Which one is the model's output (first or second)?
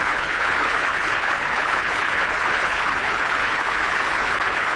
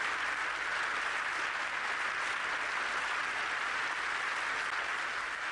first